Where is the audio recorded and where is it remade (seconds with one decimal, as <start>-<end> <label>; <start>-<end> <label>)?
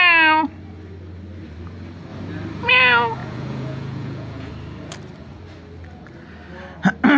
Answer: 0.0-3.2 recorded; 3.2-4.5 remade; 4.5-7.2 recorded